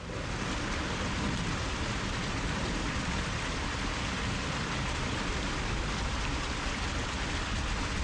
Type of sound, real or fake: real